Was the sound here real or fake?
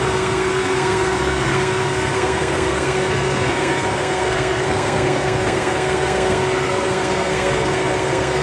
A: fake